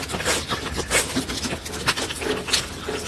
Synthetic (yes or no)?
no